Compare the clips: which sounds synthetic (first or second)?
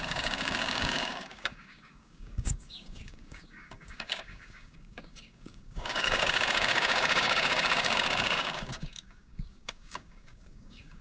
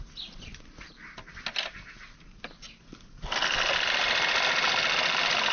first